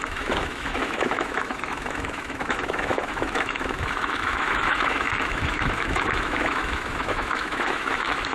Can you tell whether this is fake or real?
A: fake